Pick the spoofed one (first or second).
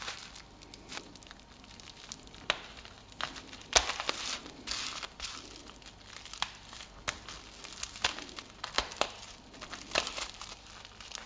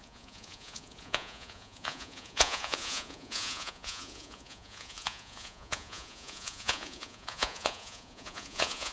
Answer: second